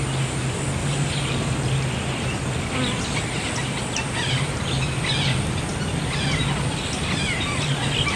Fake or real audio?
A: real